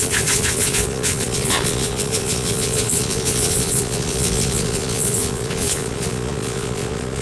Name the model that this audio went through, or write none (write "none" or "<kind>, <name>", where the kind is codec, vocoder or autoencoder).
vocoder, Vocos